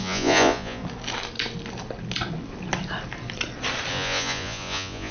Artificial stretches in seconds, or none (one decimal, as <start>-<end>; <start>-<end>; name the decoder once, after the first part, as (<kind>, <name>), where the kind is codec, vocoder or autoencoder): 0.0-0.8 (vocoder, Vocos); 3.9-5.1

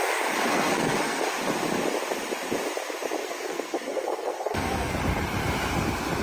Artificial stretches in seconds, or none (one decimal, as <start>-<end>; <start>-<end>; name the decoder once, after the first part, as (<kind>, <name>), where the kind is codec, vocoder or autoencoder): 0.5-1.2 (codec, SNAC); 3.2-4.9

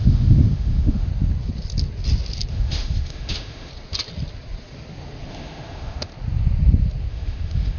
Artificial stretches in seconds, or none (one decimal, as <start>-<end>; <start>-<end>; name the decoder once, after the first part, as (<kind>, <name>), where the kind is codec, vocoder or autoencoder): 0.0-1.1 (autoencoder, DAC-VAE); 2.5-3.7; 5.3-6.1; 7.1-7.8

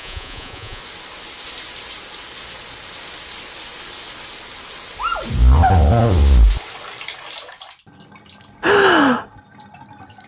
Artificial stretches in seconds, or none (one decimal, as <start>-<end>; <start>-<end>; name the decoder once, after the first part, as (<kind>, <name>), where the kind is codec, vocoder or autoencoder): 0.0-0.8 (vocoder, Vocos)

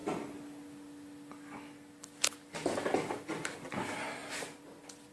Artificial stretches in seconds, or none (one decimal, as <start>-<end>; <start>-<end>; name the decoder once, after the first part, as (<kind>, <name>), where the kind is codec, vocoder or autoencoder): none